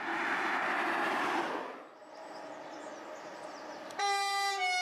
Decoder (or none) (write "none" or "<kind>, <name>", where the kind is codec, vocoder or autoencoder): none